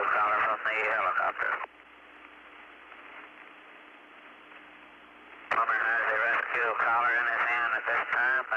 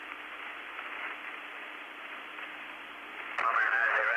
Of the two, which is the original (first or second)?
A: first